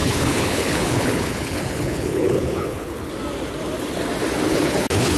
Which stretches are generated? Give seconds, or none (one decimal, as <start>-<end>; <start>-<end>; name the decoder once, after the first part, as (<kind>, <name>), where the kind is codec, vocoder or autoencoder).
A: 0.0-3.1 (codec, HILCodec); 4.5-5.2